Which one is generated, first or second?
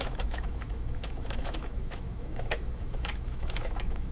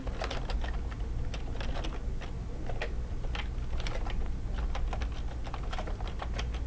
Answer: first